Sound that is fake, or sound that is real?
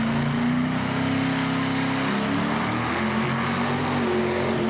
real